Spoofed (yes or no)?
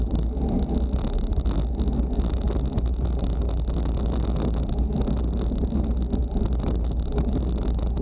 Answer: no